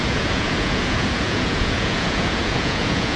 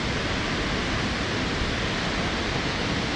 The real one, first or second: second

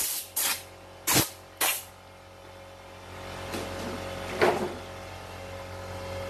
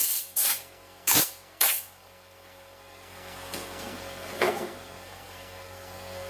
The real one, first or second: first